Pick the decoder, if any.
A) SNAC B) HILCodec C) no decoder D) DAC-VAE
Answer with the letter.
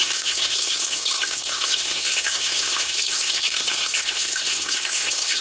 A